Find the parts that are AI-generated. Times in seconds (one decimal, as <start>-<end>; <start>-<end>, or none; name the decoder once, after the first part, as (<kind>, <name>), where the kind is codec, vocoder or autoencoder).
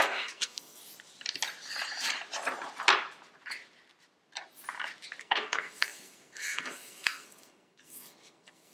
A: 0.0-0.8 (codec, SNAC); 5.2-8.7